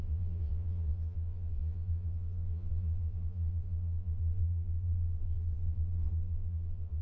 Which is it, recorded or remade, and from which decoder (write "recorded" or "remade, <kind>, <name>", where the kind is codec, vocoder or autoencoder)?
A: remade, vocoder, Vocos